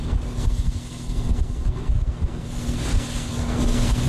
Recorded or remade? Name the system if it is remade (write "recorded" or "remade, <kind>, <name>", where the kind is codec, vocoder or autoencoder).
remade, codec, SNAC